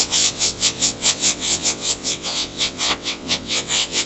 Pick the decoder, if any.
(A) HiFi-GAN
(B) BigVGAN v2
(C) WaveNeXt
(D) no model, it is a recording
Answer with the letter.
C